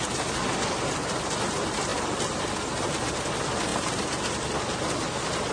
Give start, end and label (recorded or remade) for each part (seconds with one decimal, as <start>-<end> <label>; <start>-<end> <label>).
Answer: 0.0-5.5 recorded